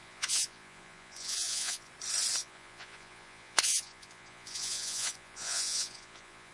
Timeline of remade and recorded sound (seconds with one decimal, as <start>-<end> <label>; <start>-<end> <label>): 0.0-1.9 remade; 1.9-2.4 recorded; 2.4-6.5 remade